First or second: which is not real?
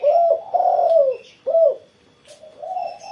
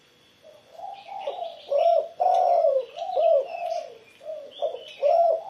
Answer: second